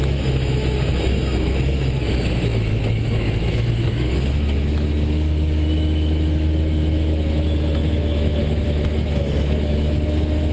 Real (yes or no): no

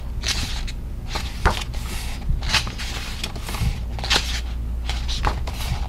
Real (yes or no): yes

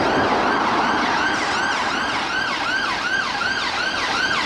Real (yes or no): yes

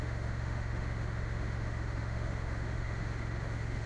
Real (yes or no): no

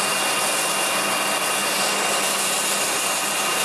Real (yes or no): yes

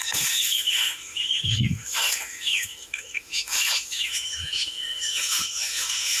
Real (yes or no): no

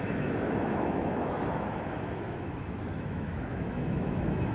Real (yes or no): no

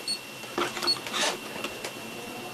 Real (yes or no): yes